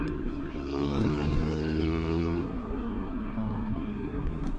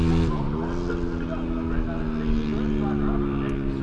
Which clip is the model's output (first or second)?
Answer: first